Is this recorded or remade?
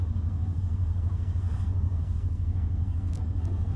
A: remade